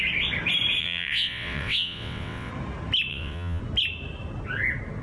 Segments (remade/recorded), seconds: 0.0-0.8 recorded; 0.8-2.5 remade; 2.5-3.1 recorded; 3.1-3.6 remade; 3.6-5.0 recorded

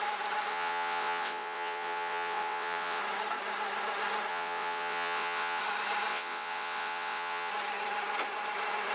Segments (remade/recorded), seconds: 0.0-0.5 recorded; 0.5-3.0 remade; 3.0-4.3 recorded; 4.3-5.6 remade; 5.6-6.1 recorded; 6.1-7.5 remade; 7.5-8.9 recorded

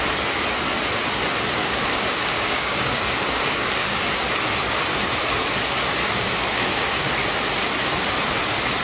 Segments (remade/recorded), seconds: 0.0-1.6 recorded; 1.6-4.0 remade; 4.0-6.0 recorded; 6.0-7.0 remade; 7.0-8.8 recorded